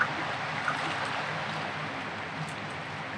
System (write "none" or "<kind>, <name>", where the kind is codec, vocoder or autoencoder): none